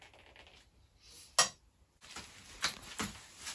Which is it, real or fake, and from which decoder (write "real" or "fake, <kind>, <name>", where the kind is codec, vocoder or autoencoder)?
real